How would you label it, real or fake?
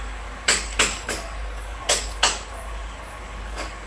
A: fake